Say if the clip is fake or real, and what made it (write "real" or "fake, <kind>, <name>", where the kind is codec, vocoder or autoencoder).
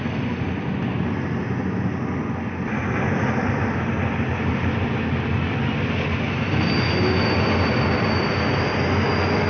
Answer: real